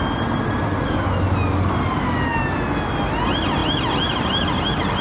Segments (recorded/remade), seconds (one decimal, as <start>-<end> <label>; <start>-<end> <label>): 0.0-5.0 recorded